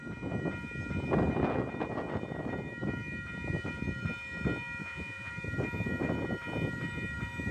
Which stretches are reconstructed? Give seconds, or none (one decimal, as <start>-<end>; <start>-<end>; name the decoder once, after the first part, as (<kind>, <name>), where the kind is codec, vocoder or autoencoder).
4.8-5.3 (vocoder, Vocos)